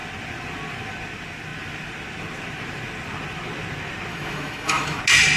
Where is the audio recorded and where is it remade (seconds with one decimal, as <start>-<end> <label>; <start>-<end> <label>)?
0.0-4.1 recorded; 4.1-5.0 remade; 5.0-5.4 recorded